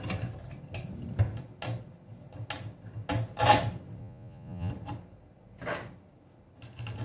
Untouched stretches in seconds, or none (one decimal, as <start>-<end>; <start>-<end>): 0.0-4.0; 4.7-7.0